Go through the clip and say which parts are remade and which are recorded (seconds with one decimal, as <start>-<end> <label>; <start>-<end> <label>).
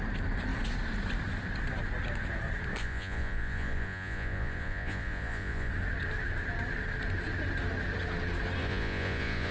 0.0-2.8 recorded; 2.8-5.7 remade; 5.7-8.6 recorded; 8.6-9.5 remade